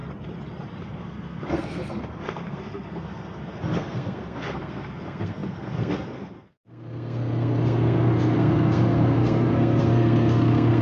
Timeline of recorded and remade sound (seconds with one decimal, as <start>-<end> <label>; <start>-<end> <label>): 0.0-0.8 recorded; 0.8-10.8 remade